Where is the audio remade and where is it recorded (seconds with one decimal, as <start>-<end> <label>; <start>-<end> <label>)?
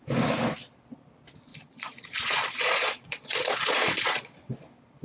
0.0-1.5 recorded; 1.5-4.5 remade; 4.5-5.0 recorded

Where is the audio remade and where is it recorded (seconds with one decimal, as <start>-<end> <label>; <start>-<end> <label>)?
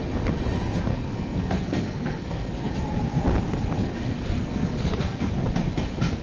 0.0-0.9 recorded; 0.9-2.7 remade; 2.7-3.8 recorded; 3.8-5.3 remade; 5.3-6.2 recorded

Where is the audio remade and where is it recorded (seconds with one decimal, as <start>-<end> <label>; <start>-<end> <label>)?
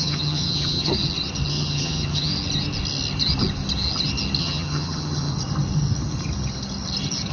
0.0-0.9 remade; 0.9-1.5 recorded; 1.5-2.3 remade; 2.3-4.4 recorded; 4.4-5.3 remade; 5.3-7.3 recorded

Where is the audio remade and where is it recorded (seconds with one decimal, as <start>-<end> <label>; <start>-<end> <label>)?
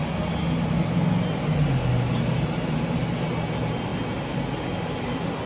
0.0-5.5 recorded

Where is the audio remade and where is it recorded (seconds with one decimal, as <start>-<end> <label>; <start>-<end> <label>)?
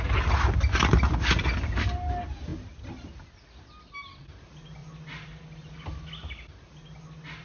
0.0-4.8 recorded; 4.8-5.4 remade; 5.4-7.4 recorded